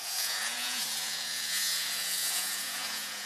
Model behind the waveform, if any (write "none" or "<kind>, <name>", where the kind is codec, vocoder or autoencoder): vocoder, Vocos